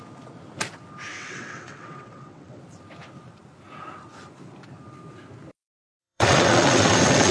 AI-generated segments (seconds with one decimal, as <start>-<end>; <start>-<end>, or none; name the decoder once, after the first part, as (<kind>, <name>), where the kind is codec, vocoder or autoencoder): 1.1-2.6 (vocoder, WaveNeXt); 6.0-7.3

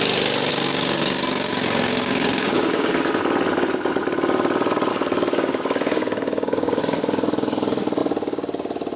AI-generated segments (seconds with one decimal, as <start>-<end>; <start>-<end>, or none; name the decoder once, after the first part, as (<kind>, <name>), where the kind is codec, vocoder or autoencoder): 0.5-3.1 (codec, DAC); 4.9-6.8

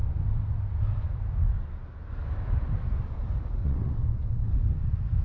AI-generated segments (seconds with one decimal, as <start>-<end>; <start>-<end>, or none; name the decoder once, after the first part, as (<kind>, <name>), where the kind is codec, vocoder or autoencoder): 3.6-4.5 (vocoder, WaveNeXt)

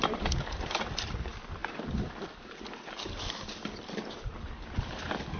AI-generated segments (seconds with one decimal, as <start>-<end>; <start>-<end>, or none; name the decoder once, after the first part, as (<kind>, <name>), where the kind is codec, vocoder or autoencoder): 0.0-1.6 (vocoder, BigVGAN v2); 2.3-5.4

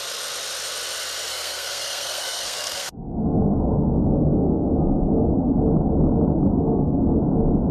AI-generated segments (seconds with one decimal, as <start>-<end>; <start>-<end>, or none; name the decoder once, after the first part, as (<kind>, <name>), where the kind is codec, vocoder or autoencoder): 1.3-5.6 (codec, SNAC); 6.5-7.2

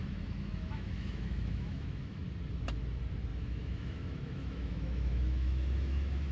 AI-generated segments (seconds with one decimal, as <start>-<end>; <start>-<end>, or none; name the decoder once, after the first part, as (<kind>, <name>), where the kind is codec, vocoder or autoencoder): 0.0-2.2 (autoencoder, DAC-VAE); 3.3-6.3

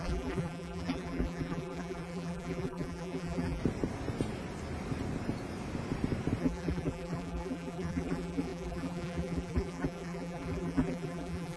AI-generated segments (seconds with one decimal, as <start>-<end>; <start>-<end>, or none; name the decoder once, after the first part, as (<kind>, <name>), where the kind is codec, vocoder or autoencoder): 0.0-3.6 (vocoder, BigVGAN v2); 6.4-11.6

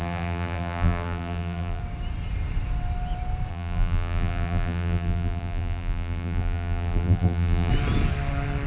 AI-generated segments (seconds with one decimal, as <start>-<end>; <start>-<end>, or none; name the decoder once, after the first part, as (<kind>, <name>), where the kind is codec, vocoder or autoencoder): 0.0-1.8 (vocoder, BigVGAN v2); 3.5-7.7